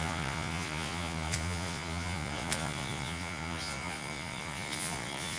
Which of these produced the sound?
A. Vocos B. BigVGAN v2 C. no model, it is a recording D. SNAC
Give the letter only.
A